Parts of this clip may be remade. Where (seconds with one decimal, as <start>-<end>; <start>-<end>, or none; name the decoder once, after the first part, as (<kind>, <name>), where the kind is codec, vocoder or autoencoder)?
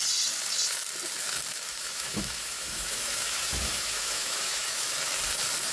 1.5-4.9 (autoencoder, DAC-VAE)